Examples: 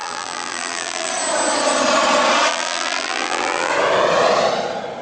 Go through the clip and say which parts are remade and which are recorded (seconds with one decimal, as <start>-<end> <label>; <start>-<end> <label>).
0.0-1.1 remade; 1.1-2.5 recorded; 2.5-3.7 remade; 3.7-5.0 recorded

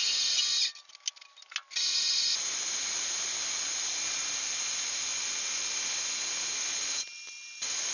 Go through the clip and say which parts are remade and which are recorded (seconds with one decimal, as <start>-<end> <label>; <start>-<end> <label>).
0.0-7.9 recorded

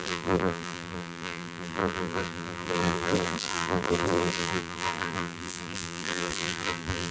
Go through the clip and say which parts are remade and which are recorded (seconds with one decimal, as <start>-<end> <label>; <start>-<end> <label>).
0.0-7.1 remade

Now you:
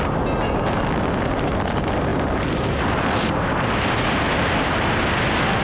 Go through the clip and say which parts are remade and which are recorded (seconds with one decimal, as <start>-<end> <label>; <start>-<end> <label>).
0.0-5.6 recorded

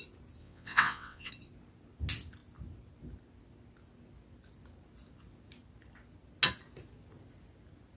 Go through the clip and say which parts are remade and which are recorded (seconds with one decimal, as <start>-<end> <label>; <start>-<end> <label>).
0.0-0.4 recorded; 0.4-1.3 remade; 1.3-8.0 recorded

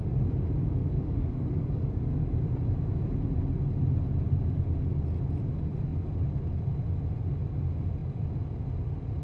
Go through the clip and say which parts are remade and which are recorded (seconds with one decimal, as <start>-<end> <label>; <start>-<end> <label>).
0.0-0.8 recorded; 0.8-2.3 remade; 2.3-9.2 recorded

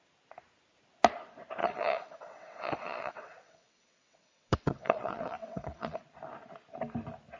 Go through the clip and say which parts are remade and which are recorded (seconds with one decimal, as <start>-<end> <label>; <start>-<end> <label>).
0.0-1.6 recorded; 1.6-6.0 remade; 6.0-7.4 recorded

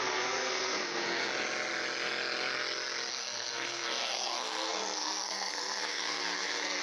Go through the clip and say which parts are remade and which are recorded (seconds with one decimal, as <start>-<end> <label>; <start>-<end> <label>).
0.0-1.3 remade; 1.3-3.1 recorded; 3.1-6.8 remade